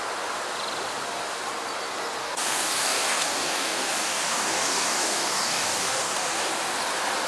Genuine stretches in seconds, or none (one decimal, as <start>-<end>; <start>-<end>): 0.0-2.2; 6.5-7.3